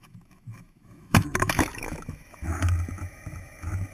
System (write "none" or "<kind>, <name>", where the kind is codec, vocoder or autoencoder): autoencoder, DAC-VAE